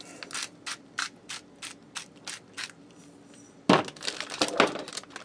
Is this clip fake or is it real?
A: real